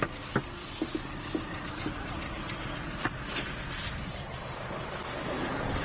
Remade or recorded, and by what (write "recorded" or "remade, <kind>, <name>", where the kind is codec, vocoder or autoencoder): recorded